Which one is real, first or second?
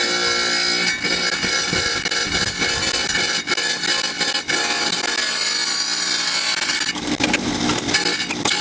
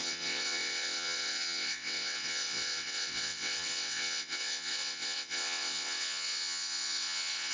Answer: first